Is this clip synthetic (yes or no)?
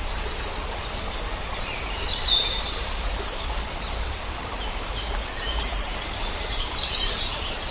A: yes